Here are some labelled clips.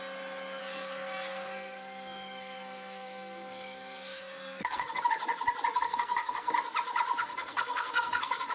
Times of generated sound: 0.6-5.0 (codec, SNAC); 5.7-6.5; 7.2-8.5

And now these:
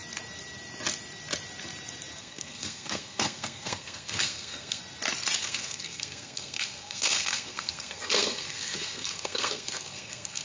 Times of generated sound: 2.2-4.8 (codec, SNAC); 5.4-10.4

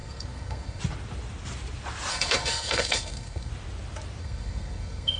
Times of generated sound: 0.0-0.8 (codec, SNAC); 2.1-3.5; 4.2-5.2